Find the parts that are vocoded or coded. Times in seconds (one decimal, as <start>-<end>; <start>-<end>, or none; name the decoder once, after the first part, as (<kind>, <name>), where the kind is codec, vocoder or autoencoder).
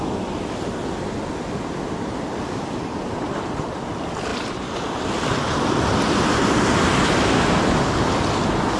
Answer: none